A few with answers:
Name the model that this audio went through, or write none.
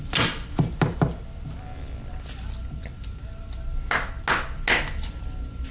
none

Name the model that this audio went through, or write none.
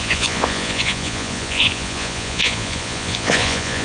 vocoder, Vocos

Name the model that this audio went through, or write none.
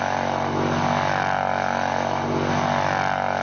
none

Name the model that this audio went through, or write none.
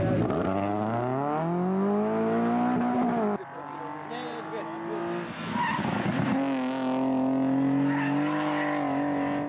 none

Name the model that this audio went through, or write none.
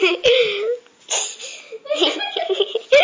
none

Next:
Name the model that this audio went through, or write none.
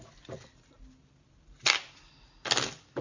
none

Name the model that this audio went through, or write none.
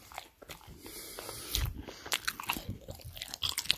none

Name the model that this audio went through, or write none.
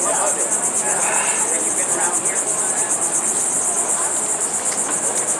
none